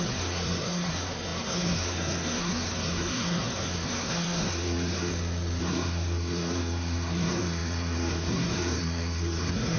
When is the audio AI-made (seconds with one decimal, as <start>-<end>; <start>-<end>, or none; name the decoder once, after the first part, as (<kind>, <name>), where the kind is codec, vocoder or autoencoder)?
0.0-5.1 (codec, SNAC); 5.6-9.8